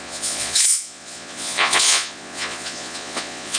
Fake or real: fake